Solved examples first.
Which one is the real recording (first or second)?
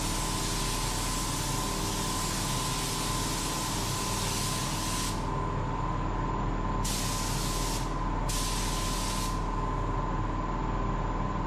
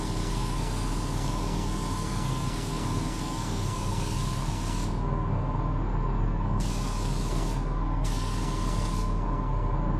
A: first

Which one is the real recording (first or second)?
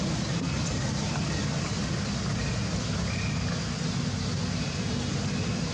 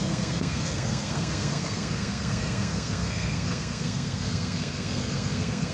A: first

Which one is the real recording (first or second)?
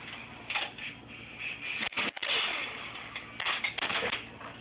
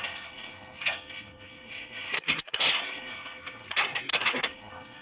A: first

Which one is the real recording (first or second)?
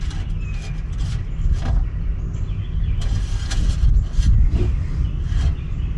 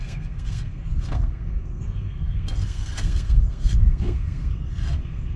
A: first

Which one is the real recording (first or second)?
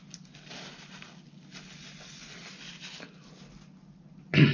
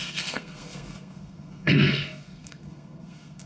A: first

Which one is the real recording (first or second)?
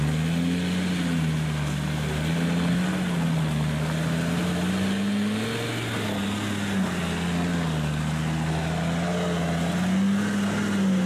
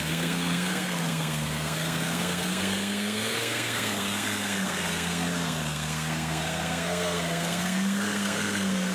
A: first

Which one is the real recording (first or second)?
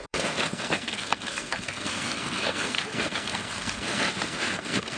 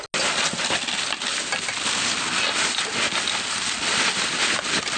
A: second